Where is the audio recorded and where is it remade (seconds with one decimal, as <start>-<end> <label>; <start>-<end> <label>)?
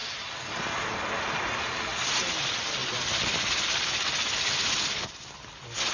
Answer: 0.0-5.9 recorded